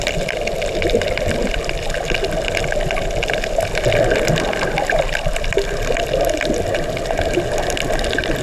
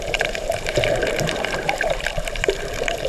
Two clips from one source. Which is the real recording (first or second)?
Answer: first